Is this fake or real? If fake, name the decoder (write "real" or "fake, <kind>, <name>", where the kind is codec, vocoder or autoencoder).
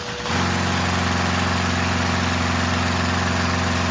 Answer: real